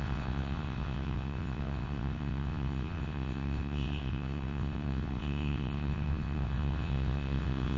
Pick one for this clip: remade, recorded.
remade